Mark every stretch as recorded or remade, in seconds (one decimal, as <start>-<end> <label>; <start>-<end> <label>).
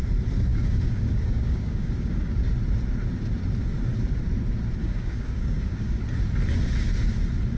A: 0.0-0.5 recorded; 0.5-2.4 remade; 2.4-4.8 recorded; 4.8-6.0 remade; 6.0-7.6 recorded